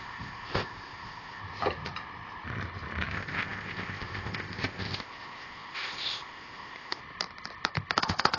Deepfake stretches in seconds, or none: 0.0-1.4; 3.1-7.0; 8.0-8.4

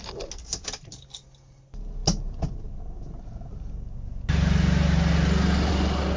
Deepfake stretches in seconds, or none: none

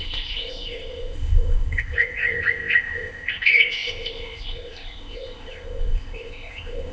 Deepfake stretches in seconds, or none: 0.0-6.9